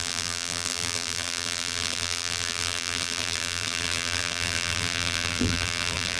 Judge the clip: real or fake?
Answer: fake